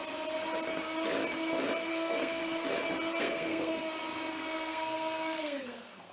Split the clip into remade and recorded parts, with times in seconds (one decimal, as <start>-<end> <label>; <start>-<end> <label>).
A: 0.0-1.9 recorded; 1.9-2.4 remade; 2.4-3.2 recorded; 3.2-3.7 remade; 3.7-4.3 recorded; 4.3-6.1 remade